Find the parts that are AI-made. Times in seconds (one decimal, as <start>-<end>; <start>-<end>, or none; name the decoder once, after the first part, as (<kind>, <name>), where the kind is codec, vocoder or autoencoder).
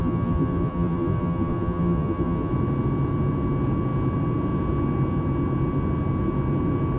0.0-2.5 (vocoder, BigVGAN v2)